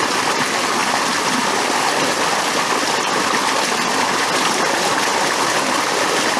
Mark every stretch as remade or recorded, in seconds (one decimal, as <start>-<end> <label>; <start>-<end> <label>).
0.0-6.4 recorded